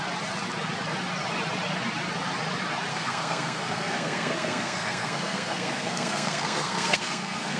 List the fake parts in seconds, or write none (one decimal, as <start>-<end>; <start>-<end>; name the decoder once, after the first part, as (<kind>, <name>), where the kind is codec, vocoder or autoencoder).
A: 2.9-7.6 (codec, SNAC)